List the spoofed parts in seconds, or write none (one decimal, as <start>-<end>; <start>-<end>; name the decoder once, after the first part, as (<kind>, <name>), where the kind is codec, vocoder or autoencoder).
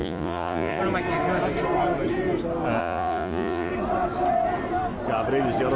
0.0-0.8 (vocoder, Vocos); 2.8-3.7